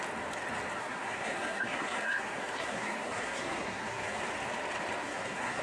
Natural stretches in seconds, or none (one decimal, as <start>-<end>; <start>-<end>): 0.0-0.8; 4.2-5.0